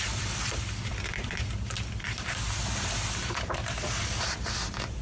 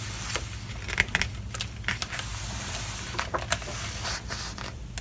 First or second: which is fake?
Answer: first